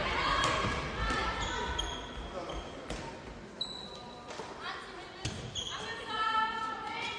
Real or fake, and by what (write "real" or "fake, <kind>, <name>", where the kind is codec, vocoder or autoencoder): real